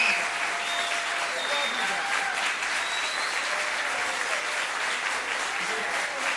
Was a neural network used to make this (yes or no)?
no